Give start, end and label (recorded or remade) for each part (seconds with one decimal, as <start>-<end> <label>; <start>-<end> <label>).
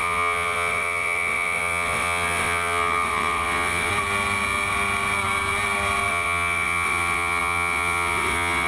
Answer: 0.0-3.9 remade; 3.9-6.1 recorded; 6.1-8.7 remade